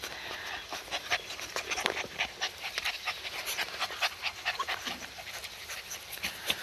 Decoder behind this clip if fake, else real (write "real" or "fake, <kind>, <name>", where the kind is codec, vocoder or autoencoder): real